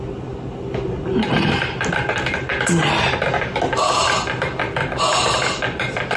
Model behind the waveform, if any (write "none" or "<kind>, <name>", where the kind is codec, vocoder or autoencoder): none